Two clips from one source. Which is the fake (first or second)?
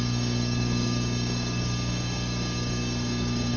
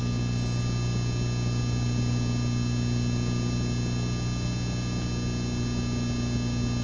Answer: first